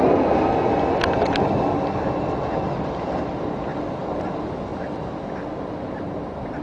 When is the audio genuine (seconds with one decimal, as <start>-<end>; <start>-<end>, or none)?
0.0-6.6